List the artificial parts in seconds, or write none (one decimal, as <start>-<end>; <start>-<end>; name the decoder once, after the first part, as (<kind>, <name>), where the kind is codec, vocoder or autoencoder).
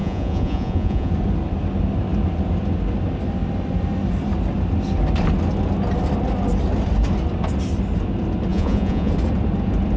0.0-1.1 (vocoder, Vocos); 8.5-9.1